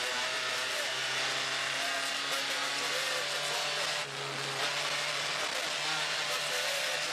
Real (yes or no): yes